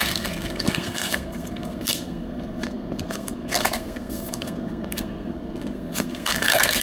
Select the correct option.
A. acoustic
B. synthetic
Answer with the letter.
B